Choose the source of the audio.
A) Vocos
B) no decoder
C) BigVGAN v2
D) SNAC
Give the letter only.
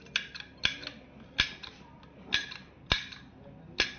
B